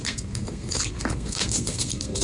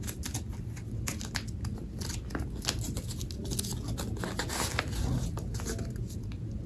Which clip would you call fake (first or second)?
first